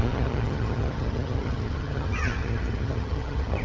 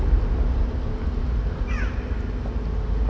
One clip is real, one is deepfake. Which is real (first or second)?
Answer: second